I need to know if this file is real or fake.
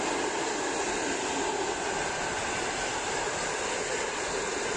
real